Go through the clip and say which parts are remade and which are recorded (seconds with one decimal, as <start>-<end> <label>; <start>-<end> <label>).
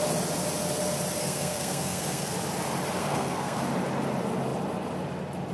0.0-1.2 recorded; 1.2-2.3 remade; 2.3-3.0 recorded; 3.0-3.6 remade; 3.6-5.5 recorded